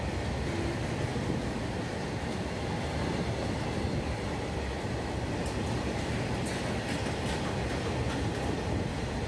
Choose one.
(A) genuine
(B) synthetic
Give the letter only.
A